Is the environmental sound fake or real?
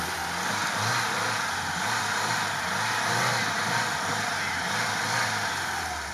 real